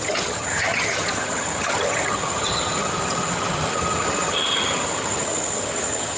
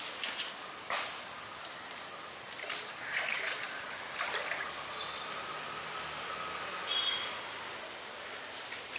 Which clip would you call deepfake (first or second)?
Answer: first